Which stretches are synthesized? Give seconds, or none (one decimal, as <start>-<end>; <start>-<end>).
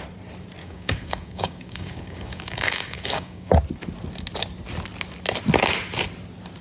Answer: 0.6-3.5